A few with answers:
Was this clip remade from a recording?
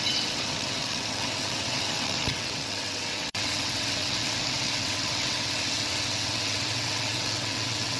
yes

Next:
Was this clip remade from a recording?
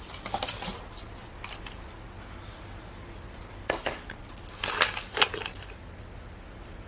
no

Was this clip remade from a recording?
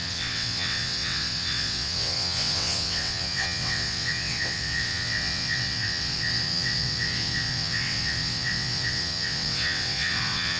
yes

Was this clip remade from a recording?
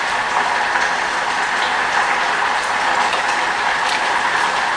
no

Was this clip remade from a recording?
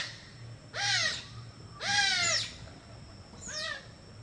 no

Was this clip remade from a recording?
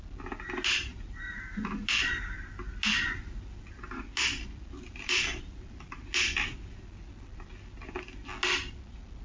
no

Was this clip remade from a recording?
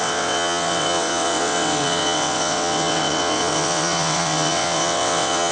yes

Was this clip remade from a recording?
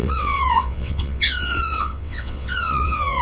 yes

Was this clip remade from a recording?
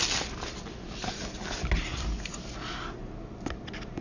no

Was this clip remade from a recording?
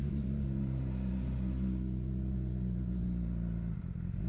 no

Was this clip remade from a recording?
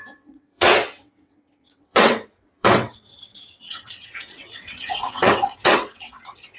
yes